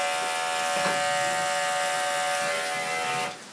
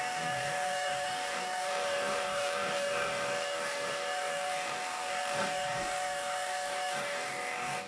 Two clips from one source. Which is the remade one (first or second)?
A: second